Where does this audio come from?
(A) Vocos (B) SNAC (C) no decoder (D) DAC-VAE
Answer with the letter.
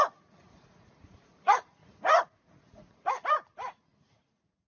A